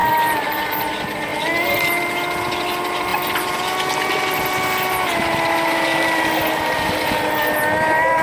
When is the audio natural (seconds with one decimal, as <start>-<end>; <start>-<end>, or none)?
0.9-8.2